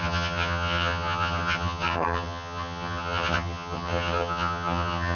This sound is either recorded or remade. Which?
remade